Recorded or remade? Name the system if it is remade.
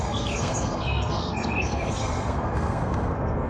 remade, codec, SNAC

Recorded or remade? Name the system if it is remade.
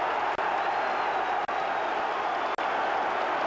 recorded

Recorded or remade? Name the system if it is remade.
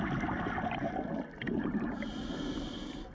recorded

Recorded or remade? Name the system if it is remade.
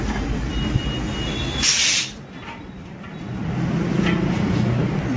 recorded